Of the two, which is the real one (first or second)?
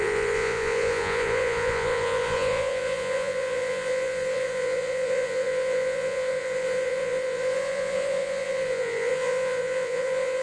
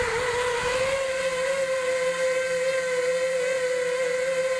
second